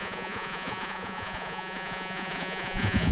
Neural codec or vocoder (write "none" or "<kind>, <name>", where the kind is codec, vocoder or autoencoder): vocoder, Vocos